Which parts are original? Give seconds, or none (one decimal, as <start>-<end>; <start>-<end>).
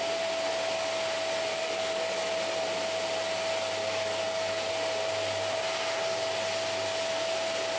0.0-1.5; 2.3-3.8; 4.7-7.8